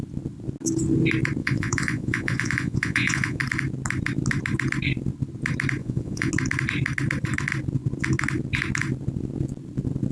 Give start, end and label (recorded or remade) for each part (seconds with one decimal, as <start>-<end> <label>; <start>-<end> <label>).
0.0-1.4 recorded; 1.4-3.4 remade; 3.4-5.8 recorded; 5.8-6.3 remade; 6.3-10.1 recorded

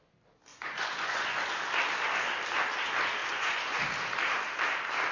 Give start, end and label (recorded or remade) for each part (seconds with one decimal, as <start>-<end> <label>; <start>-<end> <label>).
0.0-0.5 recorded; 0.5-1.5 remade; 1.5-3.2 recorded; 3.2-3.8 remade; 3.8-5.1 recorded